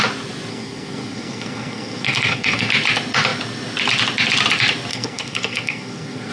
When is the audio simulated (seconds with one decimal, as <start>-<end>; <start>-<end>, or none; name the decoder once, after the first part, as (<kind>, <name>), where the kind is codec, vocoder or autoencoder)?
0.5-2.7 (codec, SNAC); 4.9-6.3